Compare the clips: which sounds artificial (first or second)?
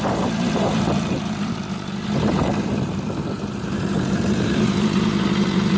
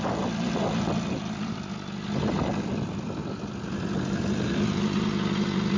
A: first